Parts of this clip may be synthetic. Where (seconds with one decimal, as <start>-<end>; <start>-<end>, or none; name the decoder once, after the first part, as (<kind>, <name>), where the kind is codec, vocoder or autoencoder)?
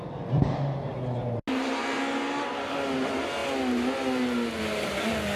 none